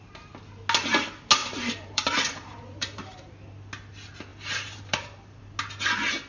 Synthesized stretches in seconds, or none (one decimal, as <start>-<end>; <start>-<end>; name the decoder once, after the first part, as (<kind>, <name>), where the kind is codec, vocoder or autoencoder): 1.4-3.3 (vocoder, BigVGAN v2); 4.3-5.4